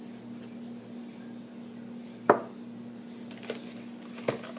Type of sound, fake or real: real